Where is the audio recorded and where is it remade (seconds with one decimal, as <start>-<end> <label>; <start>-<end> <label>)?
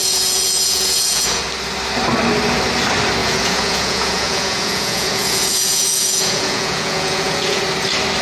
0.0-1.4 remade; 1.4-3.2 recorded; 3.2-7.6 remade; 7.6-8.2 recorded